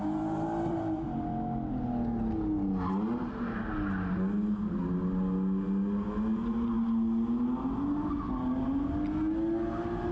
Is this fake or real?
real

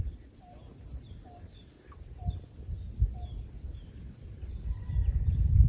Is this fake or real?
real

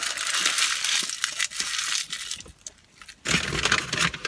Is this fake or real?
real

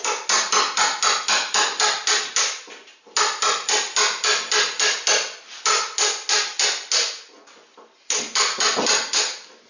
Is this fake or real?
real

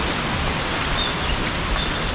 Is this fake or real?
real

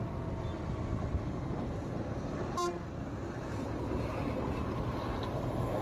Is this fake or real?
real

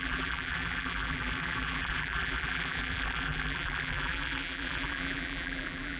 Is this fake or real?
fake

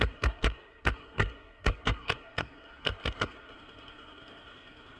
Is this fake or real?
fake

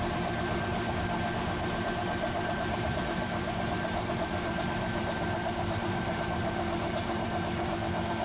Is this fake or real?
fake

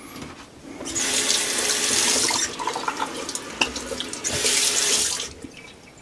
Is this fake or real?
real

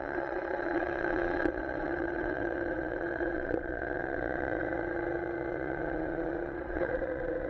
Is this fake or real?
fake